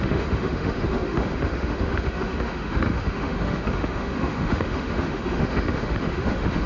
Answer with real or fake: fake